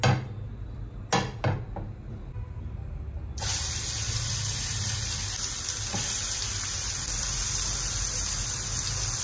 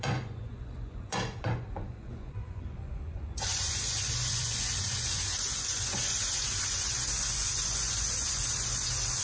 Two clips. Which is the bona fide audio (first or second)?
first